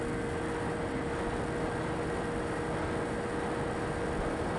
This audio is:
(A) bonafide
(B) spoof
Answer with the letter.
A